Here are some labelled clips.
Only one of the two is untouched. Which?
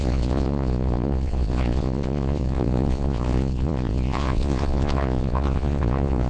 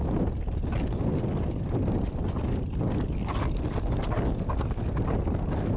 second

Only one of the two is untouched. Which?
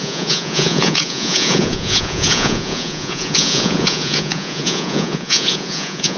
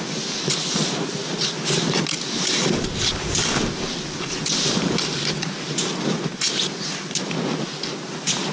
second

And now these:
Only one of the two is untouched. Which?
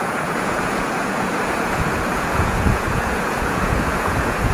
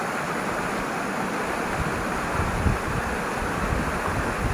second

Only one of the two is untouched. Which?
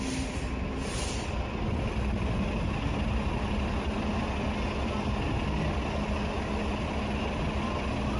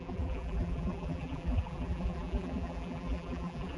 first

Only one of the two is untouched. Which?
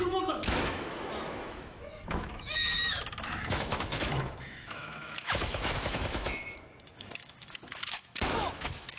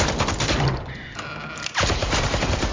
second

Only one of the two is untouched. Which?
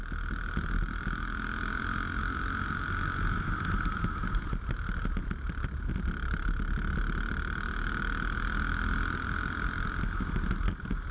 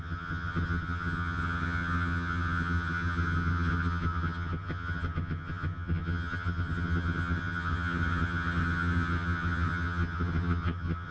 first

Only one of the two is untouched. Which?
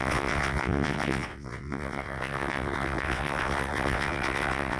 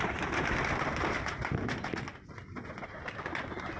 second